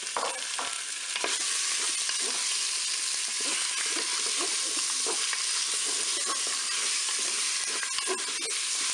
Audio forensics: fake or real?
real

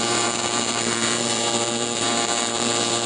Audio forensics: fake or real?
fake